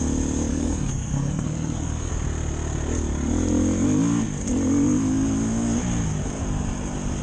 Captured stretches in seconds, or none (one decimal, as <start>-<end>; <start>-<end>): 0.0-0.5; 2.1-7.2